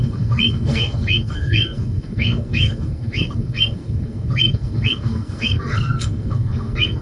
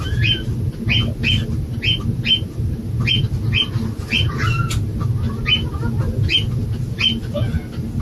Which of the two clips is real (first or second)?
second